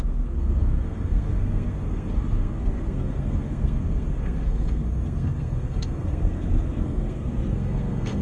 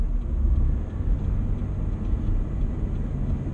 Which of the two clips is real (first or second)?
second